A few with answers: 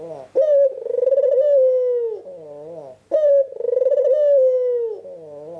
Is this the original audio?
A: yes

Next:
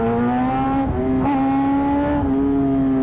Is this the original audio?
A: yes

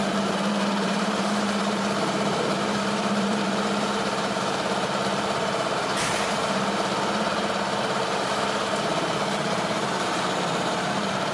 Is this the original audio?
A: no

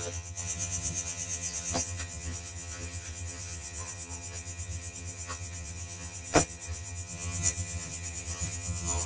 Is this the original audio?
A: no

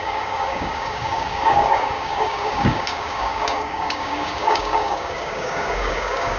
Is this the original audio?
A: no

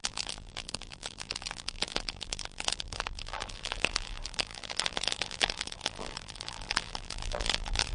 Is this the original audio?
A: no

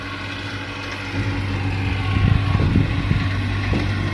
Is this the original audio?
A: yes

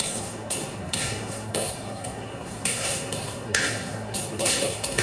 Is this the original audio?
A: no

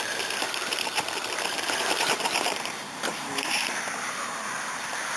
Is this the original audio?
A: no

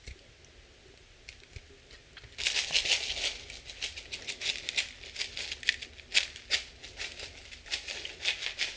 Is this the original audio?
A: yes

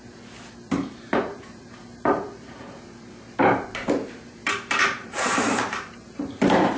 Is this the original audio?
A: no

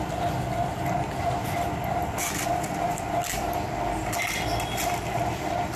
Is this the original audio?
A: yes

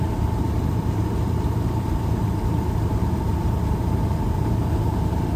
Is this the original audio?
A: no